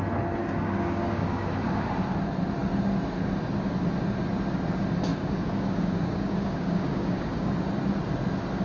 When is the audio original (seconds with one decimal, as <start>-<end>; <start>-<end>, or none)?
0.0-0.4; 1.5-5.1; 7.5-8.6